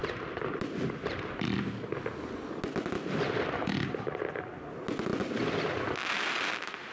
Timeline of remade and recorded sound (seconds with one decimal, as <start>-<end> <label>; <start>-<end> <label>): 0.0-6.9 recorded